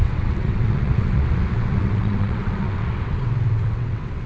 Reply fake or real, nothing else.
fake